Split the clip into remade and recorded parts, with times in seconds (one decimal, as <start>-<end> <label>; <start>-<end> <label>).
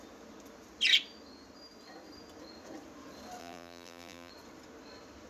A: 0.0-3.4 recorded; 3.4-4.3 remade; 4.3-5.3 recorded